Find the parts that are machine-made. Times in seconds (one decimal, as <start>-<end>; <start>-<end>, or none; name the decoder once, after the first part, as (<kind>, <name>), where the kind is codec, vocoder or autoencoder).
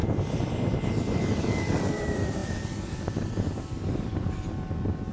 1.4-5.1 (vocoder, BigVGAN v2)